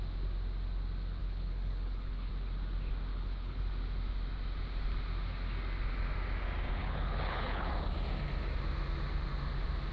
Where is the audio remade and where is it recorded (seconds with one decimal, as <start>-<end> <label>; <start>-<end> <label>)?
0.0-1.2 recorded; 1.2-2.3 remade; 2.3-3.1 recorded; 3.1-3.6 remade; 3.6-6.8 recorded; 6.8-7.7 remade; 7.7-9.9 recorded